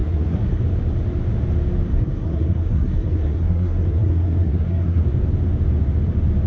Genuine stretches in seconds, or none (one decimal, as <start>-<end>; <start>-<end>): 0.6-1.9; 5.0-6.5